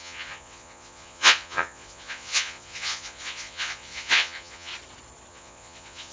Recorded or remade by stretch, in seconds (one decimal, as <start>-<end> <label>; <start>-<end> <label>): 0.0-4.7 remade; 4.7-5.3 recorded; 5.3-6.1 remade

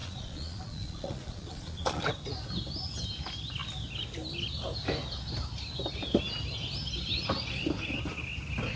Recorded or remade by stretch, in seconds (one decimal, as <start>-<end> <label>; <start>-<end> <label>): 0.0-2.1 remade; 2.1-8.8 recorded

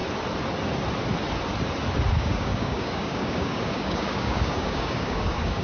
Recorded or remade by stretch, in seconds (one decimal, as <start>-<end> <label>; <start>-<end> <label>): 0.0-2.1 recorded; 2.1-5.6 remade